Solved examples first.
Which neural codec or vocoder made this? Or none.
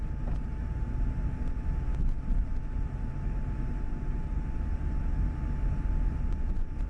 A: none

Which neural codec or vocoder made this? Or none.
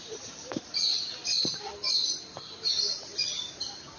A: vocoder, BigVGAN v2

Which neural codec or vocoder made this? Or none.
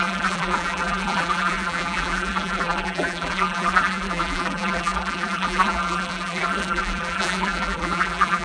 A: vocoder, BigVGAN v2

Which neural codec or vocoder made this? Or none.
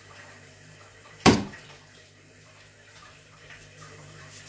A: vocoder, BigVGAN v2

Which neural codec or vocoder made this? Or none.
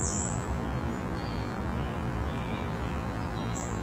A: vocoder, BigVGAN v2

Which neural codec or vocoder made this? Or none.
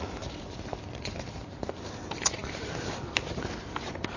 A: none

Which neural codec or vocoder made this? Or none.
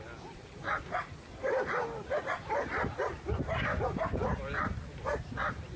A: vocoder, BigVGAN v2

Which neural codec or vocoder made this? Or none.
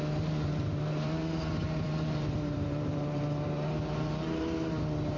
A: vocoder, BigVGAN v2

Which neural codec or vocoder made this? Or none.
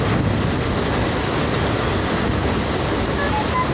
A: none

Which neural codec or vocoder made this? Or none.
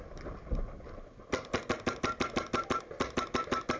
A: none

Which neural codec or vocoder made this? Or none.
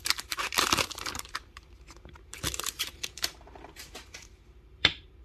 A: vocoder, BigVGAN v2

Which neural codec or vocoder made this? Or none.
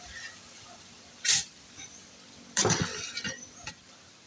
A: vocoder, BigVGAN v2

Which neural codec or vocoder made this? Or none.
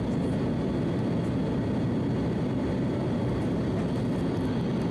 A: none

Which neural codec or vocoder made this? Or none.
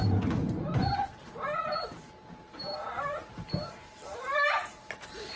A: vocoder, BigVGAN v2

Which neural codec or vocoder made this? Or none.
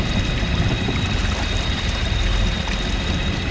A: vocoder, BigVGAN v2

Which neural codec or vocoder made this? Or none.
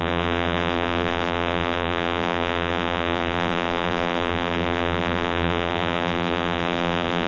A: vocoder, BigVGAN v2